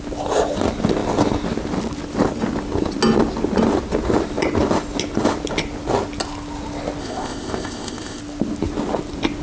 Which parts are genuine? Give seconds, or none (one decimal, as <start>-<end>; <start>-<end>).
0.0-7.0; 8.2-9.4